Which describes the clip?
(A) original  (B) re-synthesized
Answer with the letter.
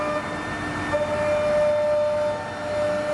A